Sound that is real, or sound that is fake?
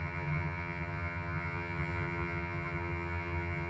fake